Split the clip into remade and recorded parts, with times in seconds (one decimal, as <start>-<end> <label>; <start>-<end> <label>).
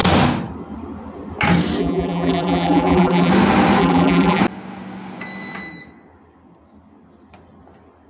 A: 0.0-1.8 recorded; 1.8-3.3 remade; 3.3-3.8 recorded; 3.8-4.4 remade; 4.4-8.1 recorded